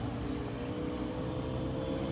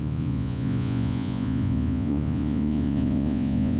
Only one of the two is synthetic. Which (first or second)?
second